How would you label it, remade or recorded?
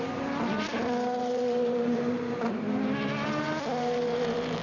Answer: remade